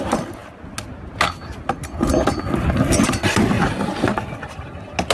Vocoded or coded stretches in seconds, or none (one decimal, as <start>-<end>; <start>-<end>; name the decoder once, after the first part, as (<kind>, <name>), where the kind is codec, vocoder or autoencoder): none